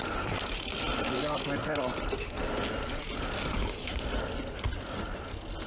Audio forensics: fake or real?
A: real